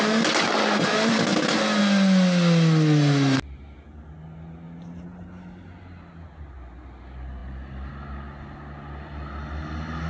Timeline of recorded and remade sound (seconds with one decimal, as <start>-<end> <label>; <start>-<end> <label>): 0.0-10.1 recorded